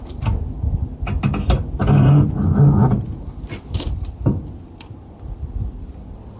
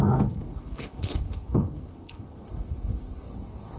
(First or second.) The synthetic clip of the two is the second